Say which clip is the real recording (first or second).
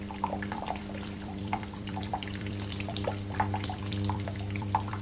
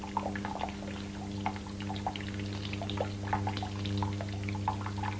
second